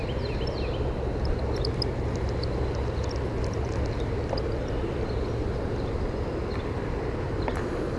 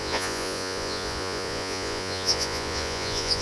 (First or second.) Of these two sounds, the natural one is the first